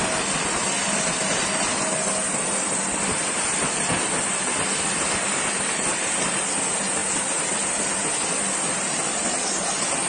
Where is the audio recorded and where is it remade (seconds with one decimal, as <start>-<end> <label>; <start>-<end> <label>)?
0.0-10.1 recorded